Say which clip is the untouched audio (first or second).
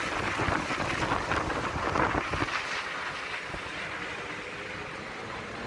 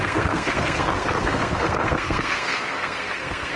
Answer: first